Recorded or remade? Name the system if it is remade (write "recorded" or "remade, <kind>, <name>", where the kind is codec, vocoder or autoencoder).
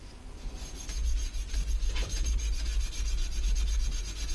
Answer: remade, vocoder, Vocos